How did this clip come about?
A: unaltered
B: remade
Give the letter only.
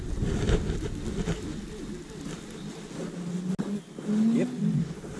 A